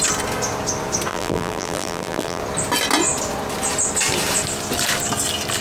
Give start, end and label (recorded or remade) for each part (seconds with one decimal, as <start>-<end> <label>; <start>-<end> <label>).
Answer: 0.0-1.1 recorded; 1.1-2.4 remade; 2.4-5.6 recorded